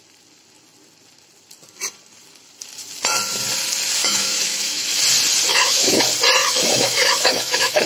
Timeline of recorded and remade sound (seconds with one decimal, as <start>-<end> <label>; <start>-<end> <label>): 0.0-4.0 recorded; 4.0-5.0 remade; 5.0-5.5 recorded; 5.5-6.0 remade; 6.0-6.4 recorded; 6.4-7.9 remade